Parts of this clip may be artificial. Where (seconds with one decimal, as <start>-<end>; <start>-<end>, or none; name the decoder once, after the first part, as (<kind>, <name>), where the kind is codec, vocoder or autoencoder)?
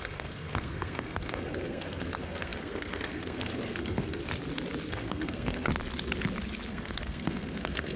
0.0-4.2 (codec, SNAC); 4.9-5.7; 6.7-8.0